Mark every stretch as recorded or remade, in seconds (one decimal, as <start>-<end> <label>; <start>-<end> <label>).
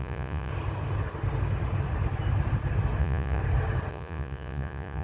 0.0-0.5 remade; 0.5-3.0 recorded; 3.0-3.4 remade; 3.4-3.9 recorded; 3.9-5.0 remade